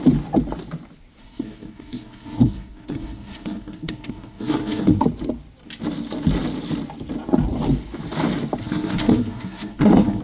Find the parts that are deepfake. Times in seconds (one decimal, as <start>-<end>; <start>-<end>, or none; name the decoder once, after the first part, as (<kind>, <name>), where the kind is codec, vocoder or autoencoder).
1.2-5.0 (codec, SNAC); 8.6-10.2